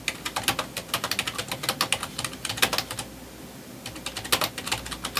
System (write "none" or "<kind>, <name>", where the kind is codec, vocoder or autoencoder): none